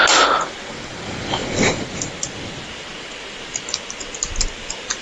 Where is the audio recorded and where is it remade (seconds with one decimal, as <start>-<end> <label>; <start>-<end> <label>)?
0.0-5.0 recorded